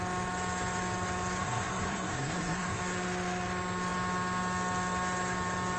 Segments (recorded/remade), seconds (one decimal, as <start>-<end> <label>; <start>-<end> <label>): 0.0-1.4 recorded; 1.4-2.8 remade; 2.8-5.8 recorded